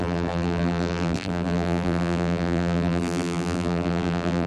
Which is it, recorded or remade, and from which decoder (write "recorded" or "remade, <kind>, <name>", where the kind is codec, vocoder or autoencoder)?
remade, vocoder, BigVGAN v2